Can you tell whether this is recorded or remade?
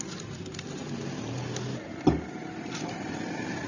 recorded